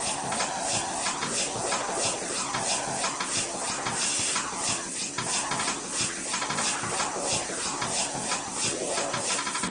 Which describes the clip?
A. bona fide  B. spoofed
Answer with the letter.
A